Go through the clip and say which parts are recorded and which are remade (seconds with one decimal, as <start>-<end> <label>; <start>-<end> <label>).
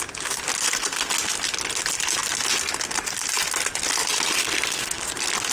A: 0.0-0.6 recorded; 0.6-1.1 remade; 1.1-4.4 recorded; 4.4-5.1 remade; 5.1-5.5 recorded